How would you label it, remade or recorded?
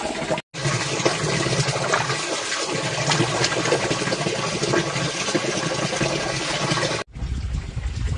recorded